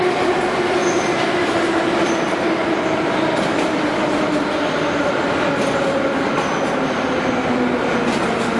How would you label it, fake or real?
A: real